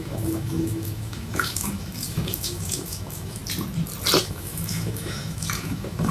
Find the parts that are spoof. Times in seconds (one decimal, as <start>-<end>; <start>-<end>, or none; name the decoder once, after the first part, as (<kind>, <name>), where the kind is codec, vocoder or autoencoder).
0.0-3.4 (autoencoder, DAC-VAE); 4.2-6.1